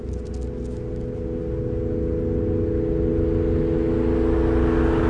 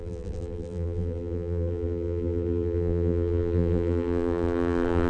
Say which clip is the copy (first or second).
second